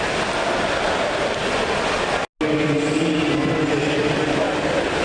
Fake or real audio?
real